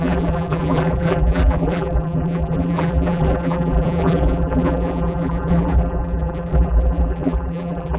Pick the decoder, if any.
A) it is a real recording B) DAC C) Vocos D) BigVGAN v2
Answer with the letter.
D